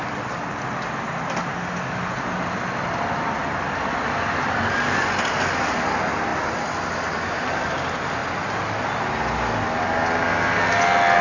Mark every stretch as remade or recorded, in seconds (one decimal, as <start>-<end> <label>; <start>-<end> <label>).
0.0-11.2 recorded